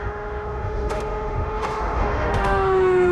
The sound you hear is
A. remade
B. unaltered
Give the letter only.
A